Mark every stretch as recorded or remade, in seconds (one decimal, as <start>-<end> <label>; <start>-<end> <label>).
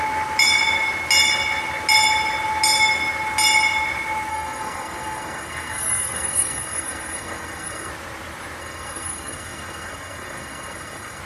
0.0-4.3 recorded; 4.3-7.9 remade; 7.9-8.6 recorded; 8.6-11.2 remade